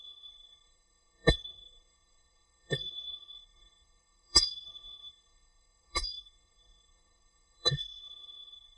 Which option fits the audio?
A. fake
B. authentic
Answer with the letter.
A